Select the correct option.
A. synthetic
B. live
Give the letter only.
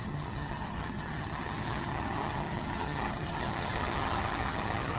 A